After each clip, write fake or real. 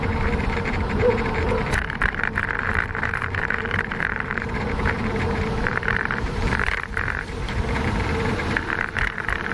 fake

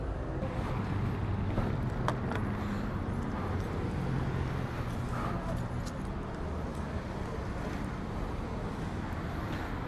real